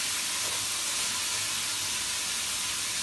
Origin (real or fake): real